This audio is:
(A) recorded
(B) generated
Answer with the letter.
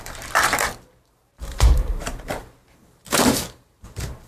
B